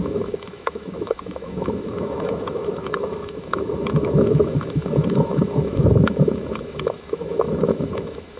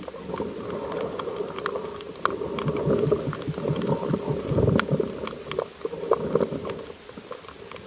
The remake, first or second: first